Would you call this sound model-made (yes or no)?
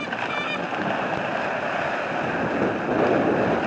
no